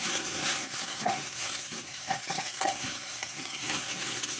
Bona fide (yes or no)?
no